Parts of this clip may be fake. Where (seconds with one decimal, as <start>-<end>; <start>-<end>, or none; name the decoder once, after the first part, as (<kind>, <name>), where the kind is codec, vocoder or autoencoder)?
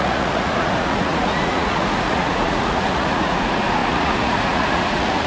0.0-5.3 (vocoder, Vocos)